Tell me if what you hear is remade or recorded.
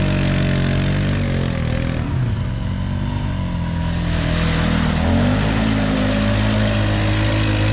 recorded